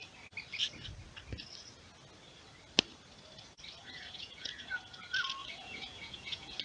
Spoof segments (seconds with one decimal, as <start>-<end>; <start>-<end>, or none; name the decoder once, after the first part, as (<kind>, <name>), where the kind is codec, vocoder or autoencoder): 3.8-4.8 (vocoder, Vocos); 5.4-6.6